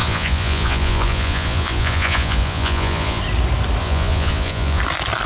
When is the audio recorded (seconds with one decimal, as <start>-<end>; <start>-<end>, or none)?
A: 3.2-3.8; 4.8-5.3